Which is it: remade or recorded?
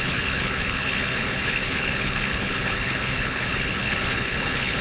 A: remade